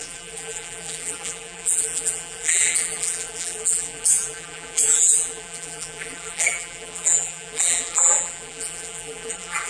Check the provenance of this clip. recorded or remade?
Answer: remade